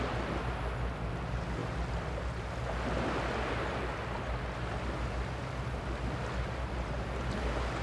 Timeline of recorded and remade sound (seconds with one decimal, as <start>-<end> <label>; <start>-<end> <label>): 0.0-7.8 recorded